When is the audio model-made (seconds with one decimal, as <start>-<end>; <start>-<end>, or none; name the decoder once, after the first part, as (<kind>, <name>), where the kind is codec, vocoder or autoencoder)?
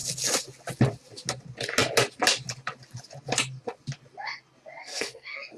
4.8-5.6 (codec, SNAC)